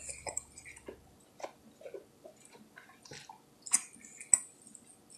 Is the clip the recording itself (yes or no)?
yes